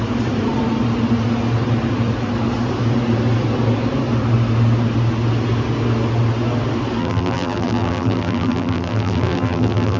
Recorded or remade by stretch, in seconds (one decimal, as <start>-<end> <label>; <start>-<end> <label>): 0.0-7.0 recorded; 7.0-10.0 remade